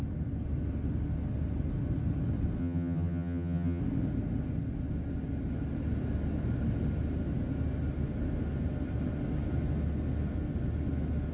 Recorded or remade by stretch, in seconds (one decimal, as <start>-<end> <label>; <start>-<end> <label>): 0.0-2.6 recorded; 2.6-3.8 remade; 3.8-11.3 recorded